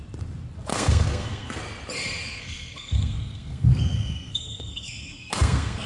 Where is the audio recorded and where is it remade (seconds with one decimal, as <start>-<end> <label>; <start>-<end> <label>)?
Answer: 0.0-0.7 recorded; 0.7-1.6 remade; 1.6-2.2 recorded; 2.2-5.9 remade